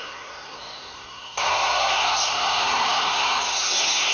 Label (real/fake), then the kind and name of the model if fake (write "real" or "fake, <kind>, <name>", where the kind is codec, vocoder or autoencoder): fake, codec, SNAC